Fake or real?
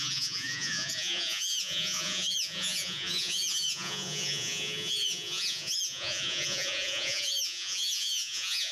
fake